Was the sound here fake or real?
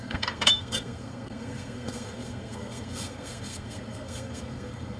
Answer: fake